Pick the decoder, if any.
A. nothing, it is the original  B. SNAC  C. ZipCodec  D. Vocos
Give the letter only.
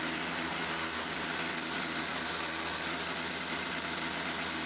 A